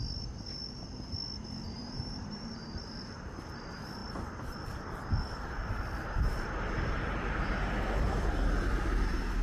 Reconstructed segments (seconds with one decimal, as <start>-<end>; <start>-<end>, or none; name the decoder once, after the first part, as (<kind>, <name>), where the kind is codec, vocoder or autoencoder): 1.8-2.7 (vocoder, BigVGAN v2)